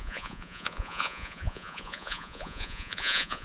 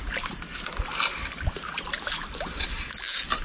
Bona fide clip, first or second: second